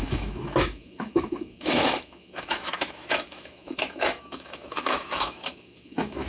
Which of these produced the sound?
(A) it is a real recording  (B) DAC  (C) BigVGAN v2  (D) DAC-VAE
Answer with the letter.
D